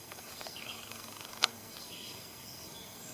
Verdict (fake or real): fake